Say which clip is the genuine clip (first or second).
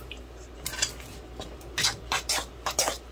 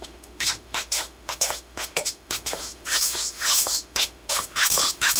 first